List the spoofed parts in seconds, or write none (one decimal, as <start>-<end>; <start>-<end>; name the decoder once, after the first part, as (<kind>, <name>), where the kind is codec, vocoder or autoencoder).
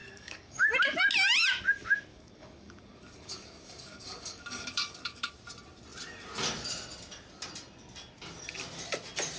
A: 0.0-0.7 (codec, DAC); 2.1-5.3